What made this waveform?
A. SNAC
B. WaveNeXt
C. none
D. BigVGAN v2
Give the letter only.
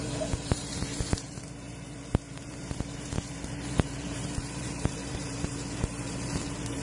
D